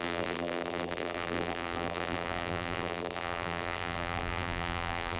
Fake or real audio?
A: fake